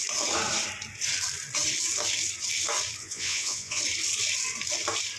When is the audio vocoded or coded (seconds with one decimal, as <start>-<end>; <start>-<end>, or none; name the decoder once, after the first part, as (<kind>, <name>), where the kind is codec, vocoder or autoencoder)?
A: 3.0-3.8 (vocoder, Vocos)

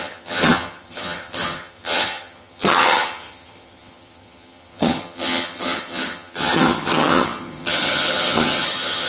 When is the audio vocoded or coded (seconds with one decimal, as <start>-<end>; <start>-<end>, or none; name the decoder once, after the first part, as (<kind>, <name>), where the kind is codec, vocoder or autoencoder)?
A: 0.0-9.1 (vocoder, HiFi-GAN)